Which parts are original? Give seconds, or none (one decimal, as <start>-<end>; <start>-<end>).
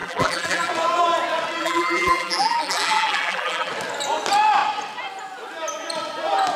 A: 0.7-1.6; 3.7-6.6